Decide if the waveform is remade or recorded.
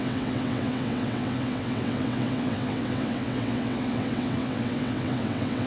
remade